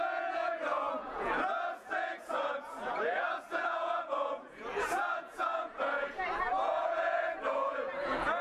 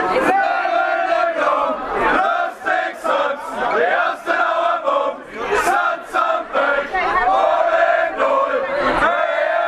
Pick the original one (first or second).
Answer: second